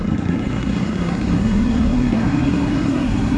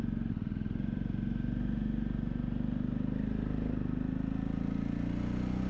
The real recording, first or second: second